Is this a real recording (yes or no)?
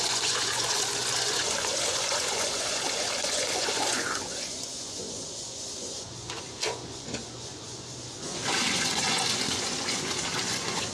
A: no